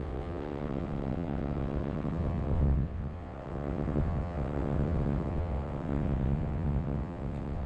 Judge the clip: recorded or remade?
remade